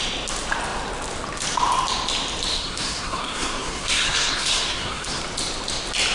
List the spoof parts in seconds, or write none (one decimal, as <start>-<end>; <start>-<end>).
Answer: 2.5-5.2